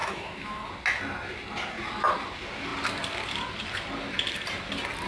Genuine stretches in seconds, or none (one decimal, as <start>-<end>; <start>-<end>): 0.7-5.1